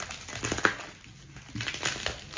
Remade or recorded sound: recorded